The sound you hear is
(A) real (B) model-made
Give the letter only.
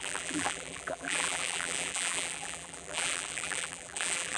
B